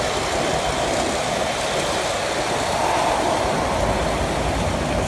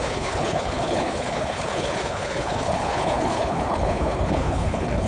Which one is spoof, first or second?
second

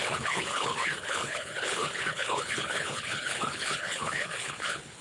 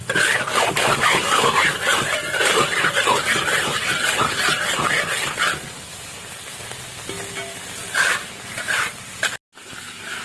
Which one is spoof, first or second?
first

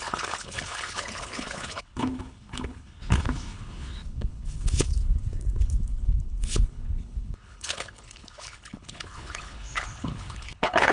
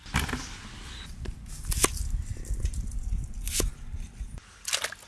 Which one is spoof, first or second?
first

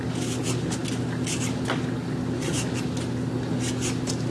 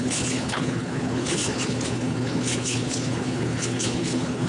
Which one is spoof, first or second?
second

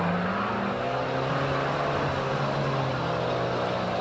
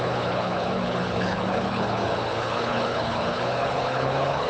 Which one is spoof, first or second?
second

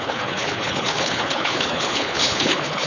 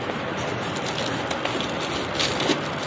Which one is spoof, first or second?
first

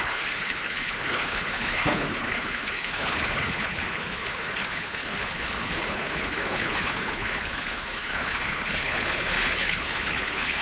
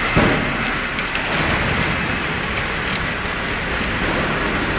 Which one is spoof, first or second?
first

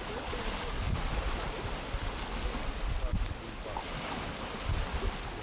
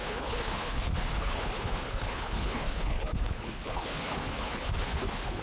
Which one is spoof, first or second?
second